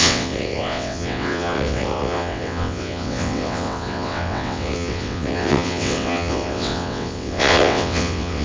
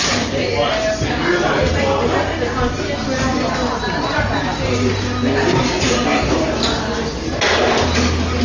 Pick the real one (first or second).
second